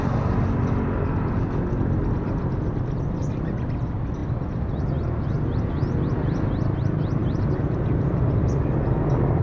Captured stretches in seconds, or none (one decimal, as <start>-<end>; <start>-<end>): 0.0-9.4